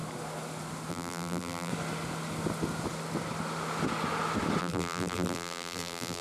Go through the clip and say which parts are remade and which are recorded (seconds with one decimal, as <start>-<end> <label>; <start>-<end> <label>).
0.0-0.9 recorded; 0.9-1.7 remade; 1.7-4.6 recorded; 4.6-6.2 remade